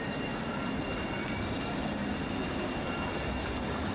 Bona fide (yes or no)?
yes